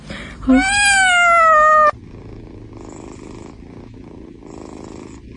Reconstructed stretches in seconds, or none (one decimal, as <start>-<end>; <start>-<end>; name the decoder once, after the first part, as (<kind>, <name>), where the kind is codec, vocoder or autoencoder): none